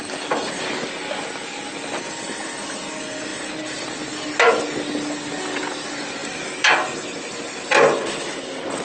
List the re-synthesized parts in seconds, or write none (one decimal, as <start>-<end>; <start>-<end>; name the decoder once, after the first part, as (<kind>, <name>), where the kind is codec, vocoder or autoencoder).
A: none